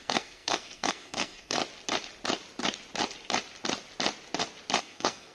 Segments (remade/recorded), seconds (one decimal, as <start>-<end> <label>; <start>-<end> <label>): 0.0-1.6 remade; 1.6-4.8 recorded; 4.8-5.3 remade